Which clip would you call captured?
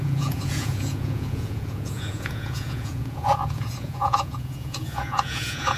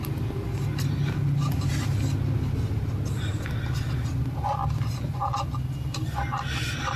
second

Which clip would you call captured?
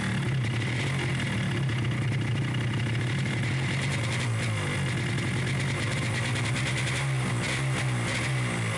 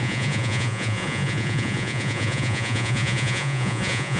first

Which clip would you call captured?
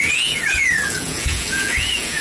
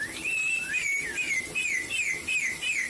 second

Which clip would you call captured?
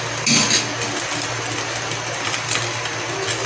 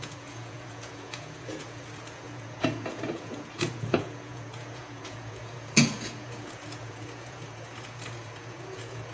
first